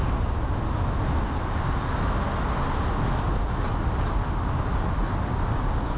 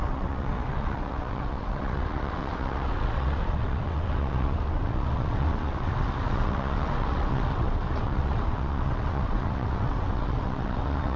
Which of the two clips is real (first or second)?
first